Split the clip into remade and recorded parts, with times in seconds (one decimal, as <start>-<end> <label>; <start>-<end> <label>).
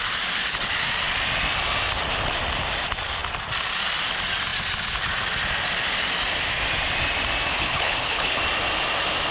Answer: 0.0-7.5 recorded; 7.5-8.4 remade; 8.4-9.3 recorded